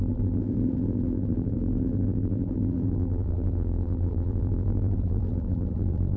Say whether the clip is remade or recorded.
remade